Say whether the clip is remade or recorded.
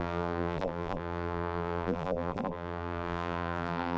remade